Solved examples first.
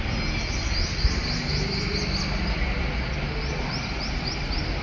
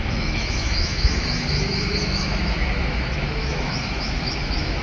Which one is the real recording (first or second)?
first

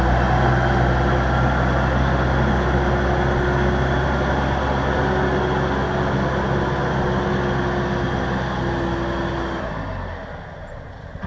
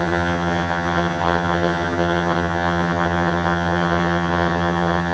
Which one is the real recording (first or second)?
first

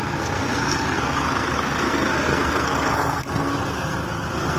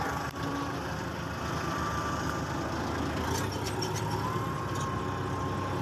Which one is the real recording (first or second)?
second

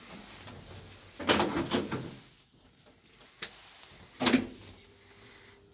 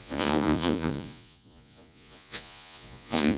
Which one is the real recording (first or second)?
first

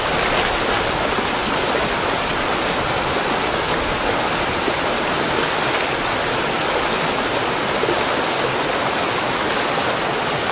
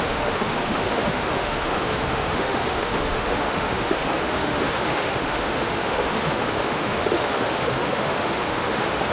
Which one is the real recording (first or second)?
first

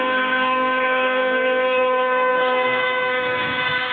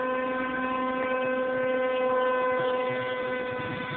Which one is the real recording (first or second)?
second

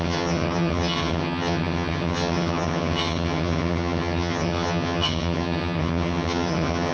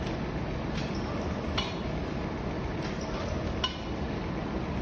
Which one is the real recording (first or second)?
second